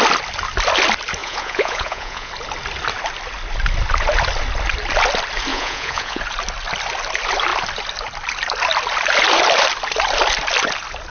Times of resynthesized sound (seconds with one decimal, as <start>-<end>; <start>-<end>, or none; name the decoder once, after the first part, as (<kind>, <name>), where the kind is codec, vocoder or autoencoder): 1.2-2.3 (vocoder, Vocos); 5.5-6.2